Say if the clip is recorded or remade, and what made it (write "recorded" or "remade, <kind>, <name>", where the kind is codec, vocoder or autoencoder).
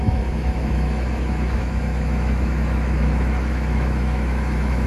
remade, autoencoder, DAC-VAE